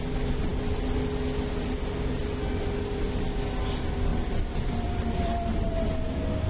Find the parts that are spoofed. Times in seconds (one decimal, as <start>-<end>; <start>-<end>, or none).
4.1-5.7